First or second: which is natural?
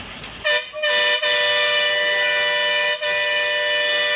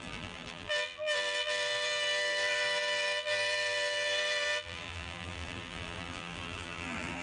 first